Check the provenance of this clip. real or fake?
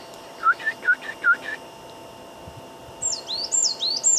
real